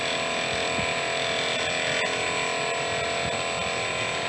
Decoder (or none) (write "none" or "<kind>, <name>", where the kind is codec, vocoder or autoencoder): none